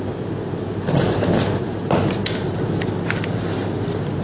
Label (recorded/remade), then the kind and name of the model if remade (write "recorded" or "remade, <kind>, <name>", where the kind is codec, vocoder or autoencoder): recorded